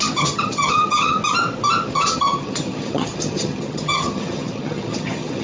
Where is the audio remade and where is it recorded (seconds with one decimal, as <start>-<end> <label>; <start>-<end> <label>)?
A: 0.0-1.2 remade; 1.2-1.9 recorded; 1.9-5.4 remade